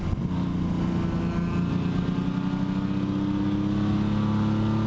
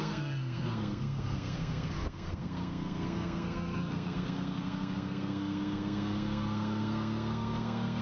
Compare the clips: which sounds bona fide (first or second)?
first